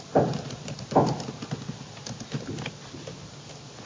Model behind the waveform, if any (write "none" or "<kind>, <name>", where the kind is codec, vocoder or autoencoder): none